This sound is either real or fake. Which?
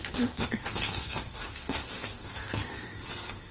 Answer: fake